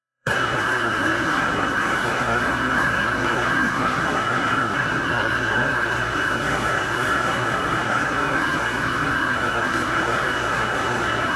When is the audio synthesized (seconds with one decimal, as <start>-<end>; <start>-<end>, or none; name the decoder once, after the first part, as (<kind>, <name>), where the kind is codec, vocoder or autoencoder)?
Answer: 0.0-11.4 (codec, SNAC)